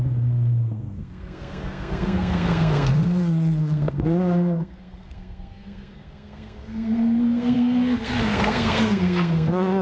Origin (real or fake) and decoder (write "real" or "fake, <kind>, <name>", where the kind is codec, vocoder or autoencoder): fake, codec, SNAC